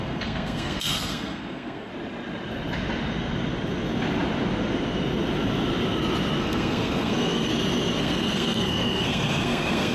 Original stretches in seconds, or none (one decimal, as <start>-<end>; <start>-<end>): 1.9-6.4; 7.5-8.0